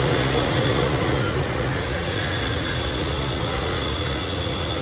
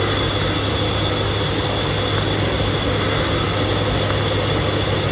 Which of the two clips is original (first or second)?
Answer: second